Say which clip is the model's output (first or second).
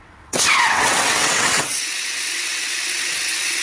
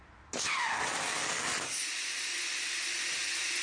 first